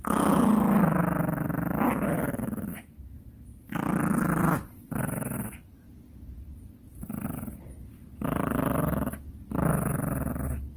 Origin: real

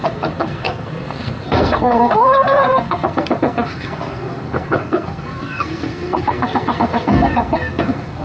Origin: fake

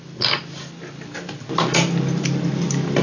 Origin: real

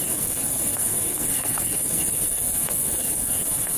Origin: fake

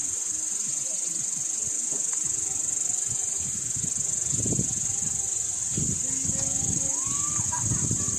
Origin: real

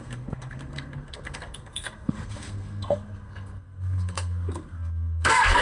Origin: fake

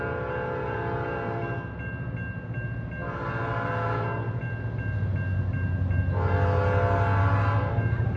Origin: real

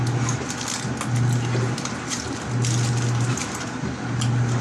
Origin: real